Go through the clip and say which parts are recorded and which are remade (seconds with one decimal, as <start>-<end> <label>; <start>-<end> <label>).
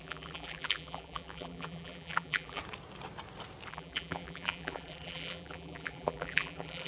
0.0-2.6 remade; 2.6-3.7 recorded; 3.7-6.9 remade